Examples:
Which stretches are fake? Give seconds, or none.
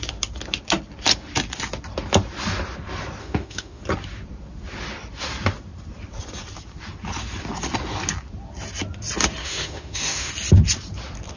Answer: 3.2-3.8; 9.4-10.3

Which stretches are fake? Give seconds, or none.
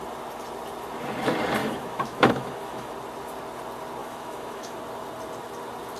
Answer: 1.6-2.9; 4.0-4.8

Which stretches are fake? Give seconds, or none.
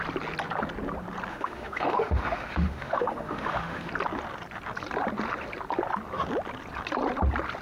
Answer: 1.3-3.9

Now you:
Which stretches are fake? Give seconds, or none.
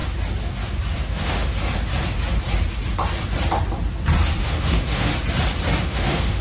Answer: 1.0-1.5; 4.4-5.1; 5.8-6.4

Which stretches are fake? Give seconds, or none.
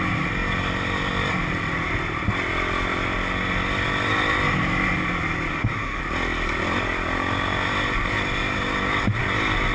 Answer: 5.5-6.0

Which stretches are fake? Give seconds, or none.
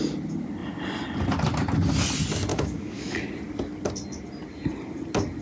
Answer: 2.5-3.3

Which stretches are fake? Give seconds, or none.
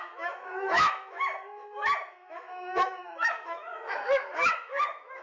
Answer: 0.0-5.2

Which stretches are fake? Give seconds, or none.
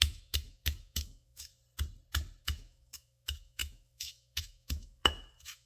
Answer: 0.0-1.5; 2.4-5.7